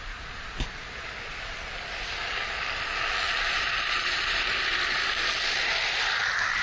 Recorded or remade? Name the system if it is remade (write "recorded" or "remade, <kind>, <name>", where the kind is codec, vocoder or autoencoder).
recorded